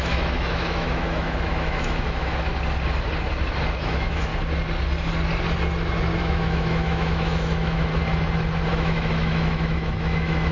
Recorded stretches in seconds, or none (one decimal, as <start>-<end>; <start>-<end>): 2.5-3.8; 4.3-6.2; 7.9-8.7